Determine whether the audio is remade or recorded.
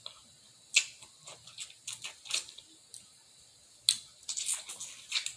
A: recorded